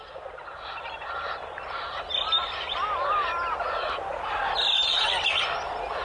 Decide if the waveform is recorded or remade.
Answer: recorded